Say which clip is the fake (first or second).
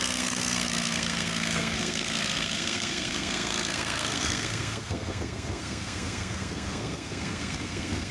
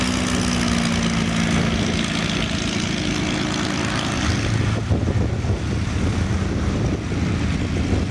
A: first